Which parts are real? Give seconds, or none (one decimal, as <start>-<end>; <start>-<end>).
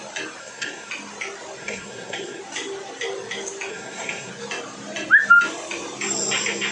0.0-0.4; 0.9-1.6; 2.4-3.7; 4.3-6.7